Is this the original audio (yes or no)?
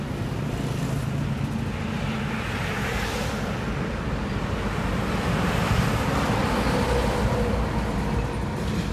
yes